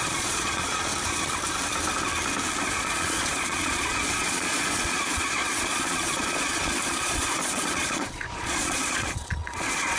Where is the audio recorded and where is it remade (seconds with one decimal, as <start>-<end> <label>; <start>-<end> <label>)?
0.0-0.9 remade; 0.9-2.7 recorded; 2.7-10.0 remade